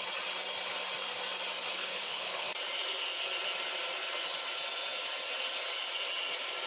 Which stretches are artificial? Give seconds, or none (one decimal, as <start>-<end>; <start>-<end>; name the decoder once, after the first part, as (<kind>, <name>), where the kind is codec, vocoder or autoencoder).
1.7-2.5 (codec, HILCodec)

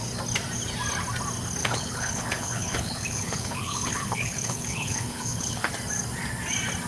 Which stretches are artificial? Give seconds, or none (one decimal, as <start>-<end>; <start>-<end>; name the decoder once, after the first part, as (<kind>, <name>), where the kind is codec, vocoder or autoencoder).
1.6-5.7 (codec, HILCodec)

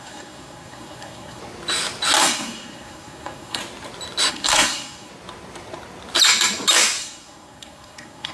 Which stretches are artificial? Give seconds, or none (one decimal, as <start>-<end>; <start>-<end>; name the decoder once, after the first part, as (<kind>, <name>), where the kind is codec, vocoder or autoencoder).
0.0-1.4 (codec, SNAC); 2.2-3.6; 4.3-5.1; 7.0-8.3

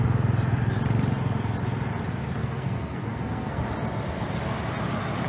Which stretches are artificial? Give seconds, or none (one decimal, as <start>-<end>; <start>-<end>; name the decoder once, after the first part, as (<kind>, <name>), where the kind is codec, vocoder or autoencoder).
2.4-3.6 (codec, SNAC)

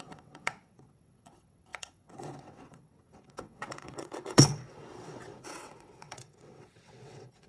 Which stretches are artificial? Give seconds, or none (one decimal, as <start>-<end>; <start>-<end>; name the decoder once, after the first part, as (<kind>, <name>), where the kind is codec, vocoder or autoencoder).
0.0-7.5 (vocoder, WaveNeXt)

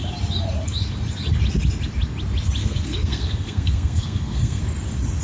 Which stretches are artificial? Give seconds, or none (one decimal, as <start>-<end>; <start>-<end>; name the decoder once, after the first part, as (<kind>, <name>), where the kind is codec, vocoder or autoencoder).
2.6-4.6 (codec, SNAC)

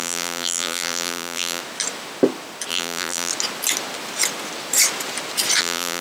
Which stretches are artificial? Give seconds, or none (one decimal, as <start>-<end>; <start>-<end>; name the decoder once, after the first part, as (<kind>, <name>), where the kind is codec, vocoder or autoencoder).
0.0-1.6 (vocoder, BigVGAN v2); 2.7-3.3; 5.6-6.0

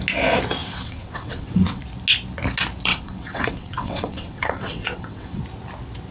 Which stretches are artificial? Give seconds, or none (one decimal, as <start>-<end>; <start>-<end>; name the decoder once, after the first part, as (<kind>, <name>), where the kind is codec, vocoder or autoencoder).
0.6-1.8 (vocoder, WaveNeXt); 2.9-5.4